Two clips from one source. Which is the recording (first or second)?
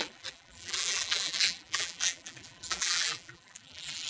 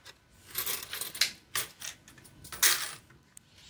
second